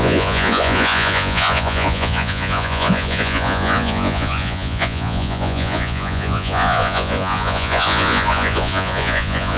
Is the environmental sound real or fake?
fake